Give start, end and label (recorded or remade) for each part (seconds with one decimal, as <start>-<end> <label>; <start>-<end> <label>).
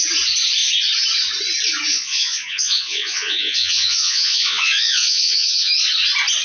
0.0-1.9 recorded; 1.9-5.7 remade; 5.7-6.4 recorded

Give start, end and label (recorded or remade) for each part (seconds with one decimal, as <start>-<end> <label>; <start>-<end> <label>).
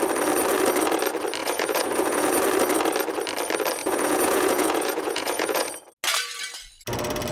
0.0-1.4 recorded; 1.4-2.4 remade; 2.4-3.8 recorded; 3.8-5.8 remade; 5.8-7.3 recorded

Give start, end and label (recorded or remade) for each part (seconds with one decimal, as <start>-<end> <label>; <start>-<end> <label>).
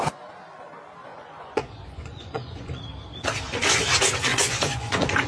0.0-1.1 recorded; 1.1-2.8 remade; 2.8-4.3 recorded; 4.3-5.3 remade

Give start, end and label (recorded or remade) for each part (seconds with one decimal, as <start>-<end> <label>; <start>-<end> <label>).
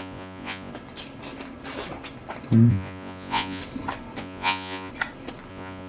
0.0-0.7 remade; 0.7-2.7 recorded; 2.7-3.6 remade; 3.6-4.2 recorded; 4.2-4.9 remade; 4.9-5.5 recorded; 5.5-5.9 remade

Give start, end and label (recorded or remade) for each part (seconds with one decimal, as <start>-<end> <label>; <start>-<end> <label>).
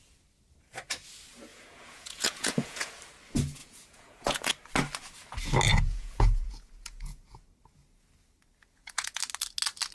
0.0-1.5 recorded; 1.5-2.9 remade; 2.9-3.6 recorded; 3.6-4.5 remade; 4.5-5.7 recorded; 5.7-7.4 remade; 7.4-8.6 recorded; 8.6-9.2 remade; 9.2-9.9 recorded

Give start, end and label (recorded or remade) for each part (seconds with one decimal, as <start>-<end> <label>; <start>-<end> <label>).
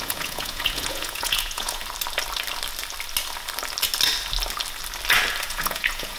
0.0-1.8 remade; 1.8-5.5 recorded; 5.5-6.2 remade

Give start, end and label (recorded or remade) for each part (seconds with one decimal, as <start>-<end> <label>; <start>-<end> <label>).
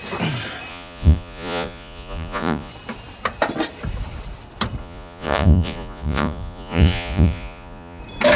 0.0-0.7 recorded; 0.7-2.7 remade; 2.7-4.8 recorded; 4.8-8.0 remade; 8.0-8.4 recorded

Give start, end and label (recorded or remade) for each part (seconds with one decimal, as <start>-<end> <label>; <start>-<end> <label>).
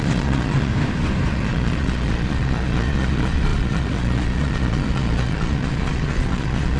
0.0-0.7 remade; 0.7-1.3 recorded; 1.3-6.8 remade